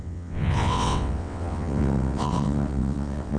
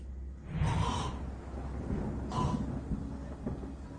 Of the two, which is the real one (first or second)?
second